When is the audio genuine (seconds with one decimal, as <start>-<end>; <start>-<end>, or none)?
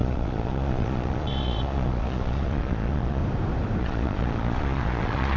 3.2-3.8